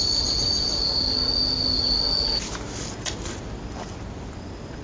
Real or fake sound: real